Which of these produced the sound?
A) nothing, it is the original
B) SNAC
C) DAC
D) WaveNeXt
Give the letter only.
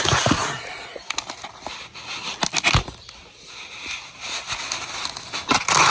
A